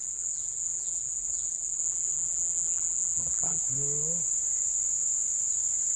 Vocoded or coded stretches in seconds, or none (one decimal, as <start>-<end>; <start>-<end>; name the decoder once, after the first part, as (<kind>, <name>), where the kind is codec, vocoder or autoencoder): 0.0-3.6 (vocoder, BigVGAN v2)